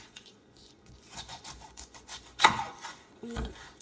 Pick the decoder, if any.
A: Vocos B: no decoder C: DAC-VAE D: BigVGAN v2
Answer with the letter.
A